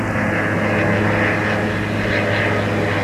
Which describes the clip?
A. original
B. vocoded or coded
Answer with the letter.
A